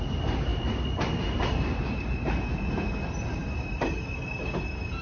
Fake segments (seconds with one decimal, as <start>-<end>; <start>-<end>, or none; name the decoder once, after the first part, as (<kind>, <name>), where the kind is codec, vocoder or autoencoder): none